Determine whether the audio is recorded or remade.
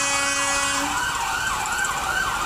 recorded